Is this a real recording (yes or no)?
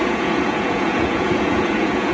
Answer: no